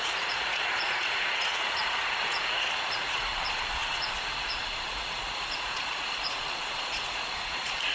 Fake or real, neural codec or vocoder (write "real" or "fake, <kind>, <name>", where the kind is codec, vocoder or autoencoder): fake, vocoder, Vocos